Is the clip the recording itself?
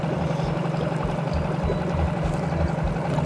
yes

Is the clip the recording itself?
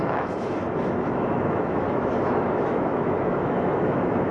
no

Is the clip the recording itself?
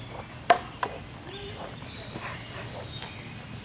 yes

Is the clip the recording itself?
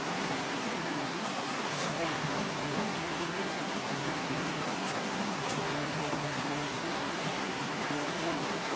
no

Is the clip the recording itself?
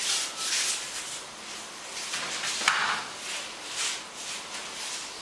yes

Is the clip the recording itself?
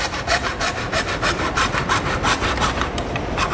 no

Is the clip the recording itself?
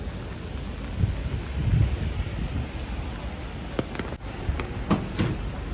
yes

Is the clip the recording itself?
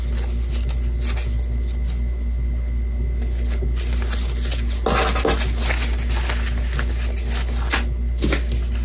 yes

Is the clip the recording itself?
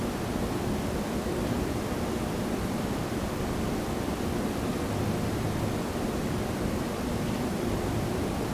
no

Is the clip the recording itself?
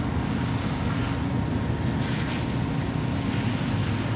yes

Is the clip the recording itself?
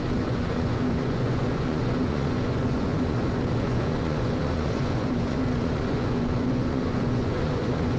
no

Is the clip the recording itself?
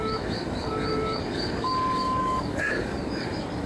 no